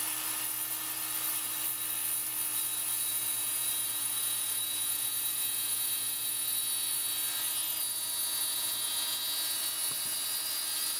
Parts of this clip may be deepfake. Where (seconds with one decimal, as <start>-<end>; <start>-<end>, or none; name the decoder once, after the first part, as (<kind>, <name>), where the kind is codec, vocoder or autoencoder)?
3.1-6.6 (vocoder, Vocos); 8.5-9.2